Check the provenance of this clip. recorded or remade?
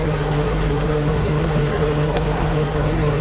remade